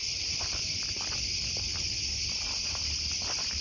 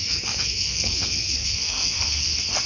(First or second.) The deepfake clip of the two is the second